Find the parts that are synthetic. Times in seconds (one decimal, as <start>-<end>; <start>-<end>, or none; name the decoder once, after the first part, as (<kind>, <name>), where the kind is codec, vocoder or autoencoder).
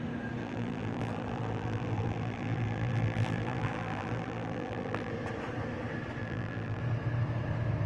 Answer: 0.4-5.1 (vocoder, BigVGAN v2); 6.2-6.8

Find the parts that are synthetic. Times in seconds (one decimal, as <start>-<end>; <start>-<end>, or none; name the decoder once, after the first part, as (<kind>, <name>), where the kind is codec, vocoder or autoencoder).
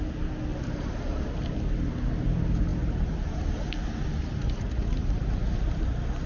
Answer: 0.5-1.0 (vocoder, BigVGAN v2); 2.7-3.4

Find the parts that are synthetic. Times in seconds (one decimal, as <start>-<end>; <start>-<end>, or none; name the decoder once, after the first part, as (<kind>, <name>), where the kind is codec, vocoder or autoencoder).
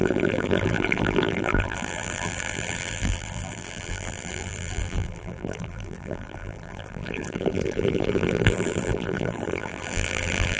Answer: 0.0-10.6 (vocoder, BigVGAN v2)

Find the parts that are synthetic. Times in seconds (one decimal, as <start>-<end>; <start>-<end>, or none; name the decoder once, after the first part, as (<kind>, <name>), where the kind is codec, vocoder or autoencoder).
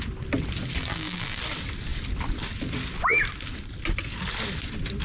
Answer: 0.8-1.4 (vocoder, BigVGAN v2)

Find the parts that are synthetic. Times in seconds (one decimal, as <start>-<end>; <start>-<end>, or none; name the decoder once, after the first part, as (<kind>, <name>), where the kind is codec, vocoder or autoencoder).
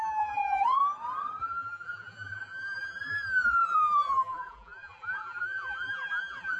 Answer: 0.0-0.8 (vocoder, BigVGAN v2); 1.4-6.6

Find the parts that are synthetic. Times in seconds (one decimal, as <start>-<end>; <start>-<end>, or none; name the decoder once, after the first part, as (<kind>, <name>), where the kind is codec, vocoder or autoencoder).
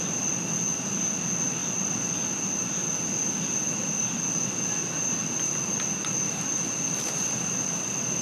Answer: none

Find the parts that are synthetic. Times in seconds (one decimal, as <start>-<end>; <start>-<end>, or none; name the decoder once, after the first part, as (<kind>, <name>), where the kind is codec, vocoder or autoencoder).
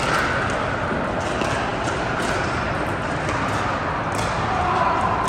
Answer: none